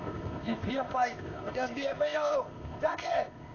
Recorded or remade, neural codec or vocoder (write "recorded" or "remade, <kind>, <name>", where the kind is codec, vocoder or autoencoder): remade, codec, ZipCodec